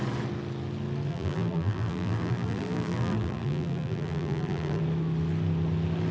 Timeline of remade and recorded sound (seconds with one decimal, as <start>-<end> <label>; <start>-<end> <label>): 0.0-1.1 recorded; 1.1-4.8 remade; 4.8-6.1 recorded